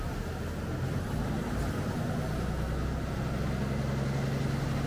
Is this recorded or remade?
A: recorded